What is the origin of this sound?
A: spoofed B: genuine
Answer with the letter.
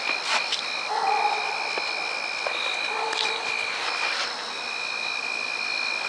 B